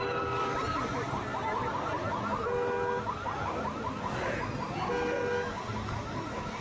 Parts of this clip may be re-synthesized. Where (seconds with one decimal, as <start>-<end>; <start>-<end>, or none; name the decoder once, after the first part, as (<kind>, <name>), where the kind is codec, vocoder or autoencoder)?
none